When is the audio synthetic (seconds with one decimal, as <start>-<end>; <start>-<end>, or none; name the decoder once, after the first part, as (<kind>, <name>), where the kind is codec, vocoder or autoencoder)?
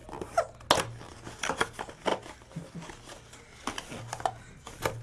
none